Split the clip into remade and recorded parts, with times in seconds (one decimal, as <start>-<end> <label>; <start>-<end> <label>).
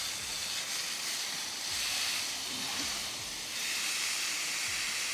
0.0-0.4 recorded; 0.4-3.5 remade; 3.5-5.1 recorded